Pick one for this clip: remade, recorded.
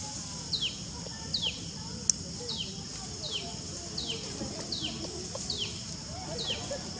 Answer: recorded